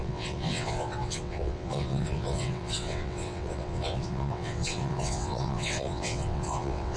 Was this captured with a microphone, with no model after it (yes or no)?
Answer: no